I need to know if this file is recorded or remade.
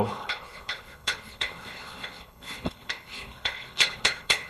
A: remade